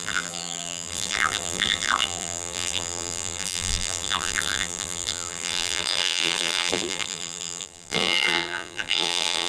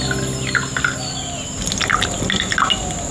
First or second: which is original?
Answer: second